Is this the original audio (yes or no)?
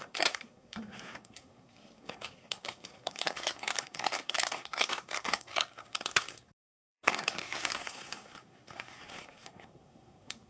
no